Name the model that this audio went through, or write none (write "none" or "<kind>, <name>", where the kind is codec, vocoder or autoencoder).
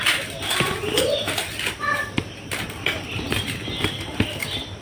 none